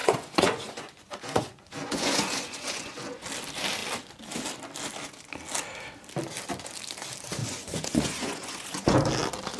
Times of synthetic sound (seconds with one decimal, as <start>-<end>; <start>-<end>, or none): 0.0-3.2; 7.4-9.0